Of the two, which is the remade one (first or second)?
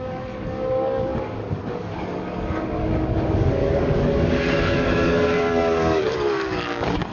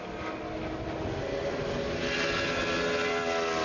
first